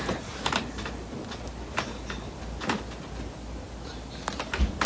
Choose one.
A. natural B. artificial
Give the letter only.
A